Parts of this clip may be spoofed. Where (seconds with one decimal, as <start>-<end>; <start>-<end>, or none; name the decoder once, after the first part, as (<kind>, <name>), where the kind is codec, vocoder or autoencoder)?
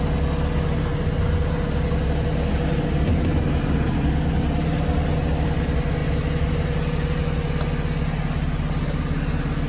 none